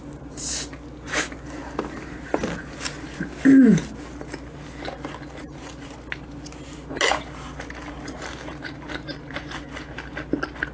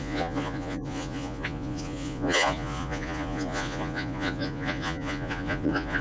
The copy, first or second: second